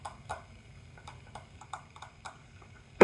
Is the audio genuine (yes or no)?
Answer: no